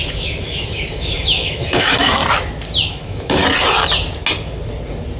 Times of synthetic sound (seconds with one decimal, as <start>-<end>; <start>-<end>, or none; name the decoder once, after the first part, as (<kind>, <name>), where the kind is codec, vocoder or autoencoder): 0.0-2.2 (autoencoder, DAC-VAE); 2.9-3.4

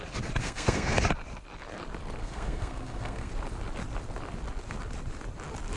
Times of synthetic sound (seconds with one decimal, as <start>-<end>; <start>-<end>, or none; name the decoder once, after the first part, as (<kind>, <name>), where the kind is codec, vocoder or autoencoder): 0.4-1.0 (codec, SNAC); 2.2-3.3

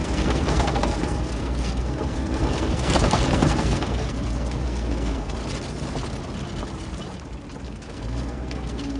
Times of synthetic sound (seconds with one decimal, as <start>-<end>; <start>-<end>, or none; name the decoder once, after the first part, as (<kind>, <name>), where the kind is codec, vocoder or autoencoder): 0.0-5.4 (codec, SNAC); 7.6-9.0

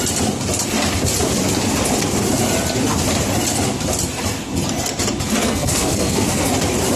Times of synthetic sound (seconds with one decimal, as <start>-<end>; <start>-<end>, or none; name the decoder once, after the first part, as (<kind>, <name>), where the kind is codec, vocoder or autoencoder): 5.4-6.5 (codec, SNAC)

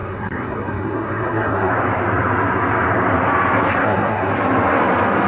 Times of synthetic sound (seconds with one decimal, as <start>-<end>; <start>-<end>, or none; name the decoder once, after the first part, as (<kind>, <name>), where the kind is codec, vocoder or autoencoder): 0.0-1.7 (codec, SNAC); 3.7-4.3

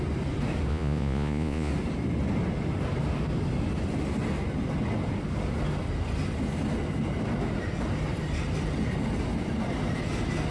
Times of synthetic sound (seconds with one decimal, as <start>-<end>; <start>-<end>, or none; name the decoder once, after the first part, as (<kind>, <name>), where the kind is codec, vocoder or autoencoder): 0.7-1.7 (vocoder, Vocos)